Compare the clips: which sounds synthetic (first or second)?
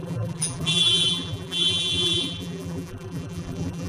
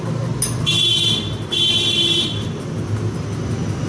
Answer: first